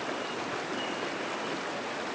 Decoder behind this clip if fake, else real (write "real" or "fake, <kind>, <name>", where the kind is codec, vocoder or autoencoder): real